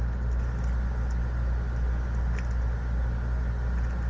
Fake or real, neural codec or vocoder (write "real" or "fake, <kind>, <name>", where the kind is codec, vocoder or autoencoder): real